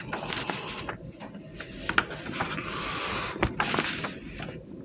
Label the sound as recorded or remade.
recorded